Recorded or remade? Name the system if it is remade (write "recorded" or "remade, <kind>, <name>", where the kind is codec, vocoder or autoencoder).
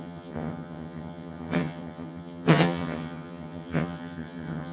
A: remade, vocoder, HiFi-GAN